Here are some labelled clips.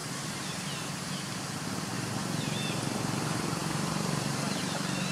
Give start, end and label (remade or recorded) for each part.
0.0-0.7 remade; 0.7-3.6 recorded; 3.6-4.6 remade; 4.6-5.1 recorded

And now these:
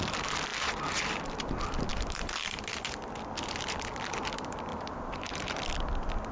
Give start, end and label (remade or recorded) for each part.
0.0-0.5 recorded; 0.5-1.5 remade; 1.5-1.9 recorded; 1.9-2.6 remade; 2.6-4.7 recorded; 4.7-5.6 remade; 5.6-6.3 recorded

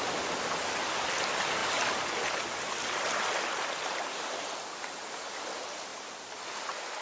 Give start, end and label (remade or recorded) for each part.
0.0-7.0 recorded

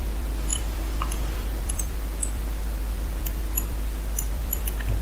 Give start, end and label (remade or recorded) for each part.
0.0-5.0 remade

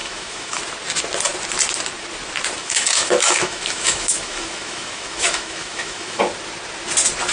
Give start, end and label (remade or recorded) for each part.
0.0-0.6 remade; 0.6-2.6 recorded; 2.6-6.2 remade; 6.2-7.3 recorded

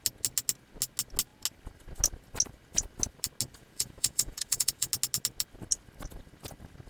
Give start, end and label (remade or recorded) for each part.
0.0-3.6 recorded; 3.6-4.9 remade; 4.9-6.9 recorded

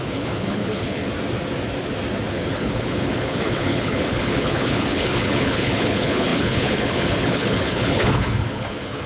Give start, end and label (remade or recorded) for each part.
0.0-1.0 remade; 1.0-2.3 recorded; 2.3-9.1 remade

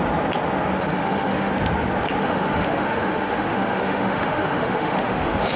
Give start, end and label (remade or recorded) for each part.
0.0-0.8 recorded; 0.8-1.5 remade; 1.5-2.2 recorded; 2.2-5.6 remade